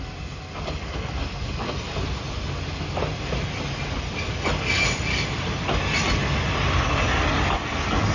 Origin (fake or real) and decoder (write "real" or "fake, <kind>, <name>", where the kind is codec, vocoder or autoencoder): real